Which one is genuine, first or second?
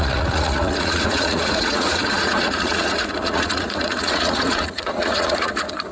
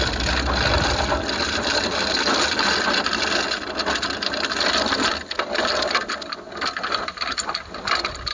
second